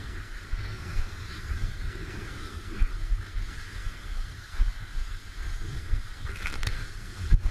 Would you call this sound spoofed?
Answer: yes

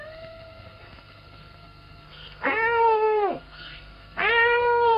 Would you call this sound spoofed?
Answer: yes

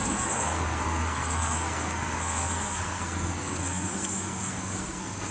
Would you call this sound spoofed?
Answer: yes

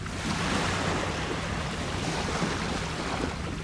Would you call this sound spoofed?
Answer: no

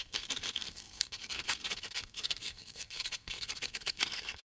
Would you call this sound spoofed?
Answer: yes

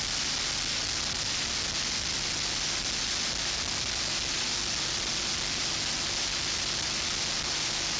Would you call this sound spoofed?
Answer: no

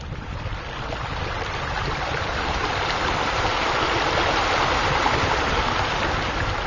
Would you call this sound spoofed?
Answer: no